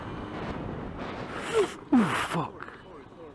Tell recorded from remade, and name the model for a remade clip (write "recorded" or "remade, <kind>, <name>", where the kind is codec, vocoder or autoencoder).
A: recorded